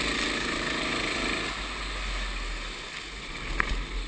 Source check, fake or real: real